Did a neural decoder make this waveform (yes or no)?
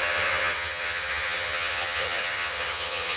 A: yes